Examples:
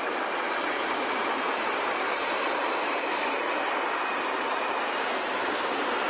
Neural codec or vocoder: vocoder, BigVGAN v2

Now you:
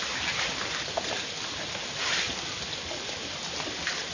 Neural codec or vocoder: none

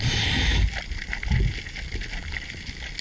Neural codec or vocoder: none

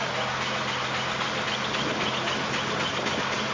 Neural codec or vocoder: none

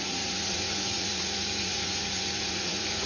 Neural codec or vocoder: vocoder, Vocos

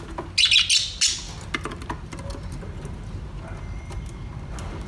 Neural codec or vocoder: none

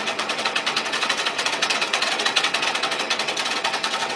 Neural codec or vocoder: vocoder, WaveNeXt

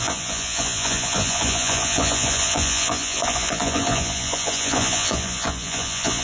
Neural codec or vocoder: vocoder, Vocos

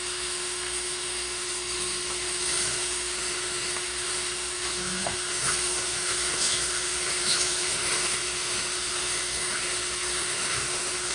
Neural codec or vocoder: autoencoder, DAC-VAE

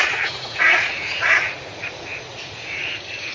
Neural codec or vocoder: vocoder, Vocos